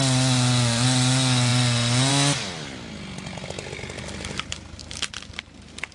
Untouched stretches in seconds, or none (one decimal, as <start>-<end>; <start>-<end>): 0.0-5.9